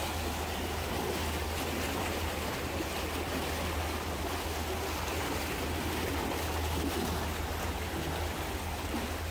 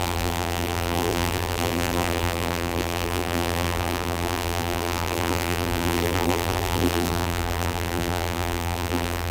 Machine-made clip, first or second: second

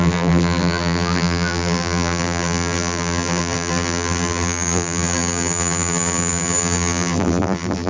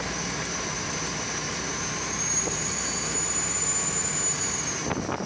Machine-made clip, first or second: first